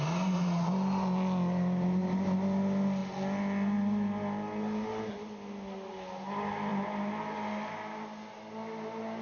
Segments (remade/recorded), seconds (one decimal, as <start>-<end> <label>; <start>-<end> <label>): 0.0-9.2 recorded